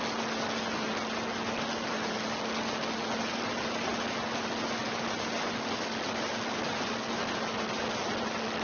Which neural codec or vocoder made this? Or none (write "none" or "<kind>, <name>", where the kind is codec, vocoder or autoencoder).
none